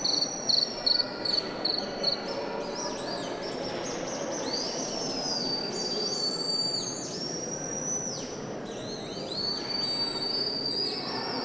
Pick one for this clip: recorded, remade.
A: recorded